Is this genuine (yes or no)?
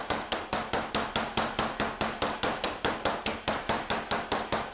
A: yes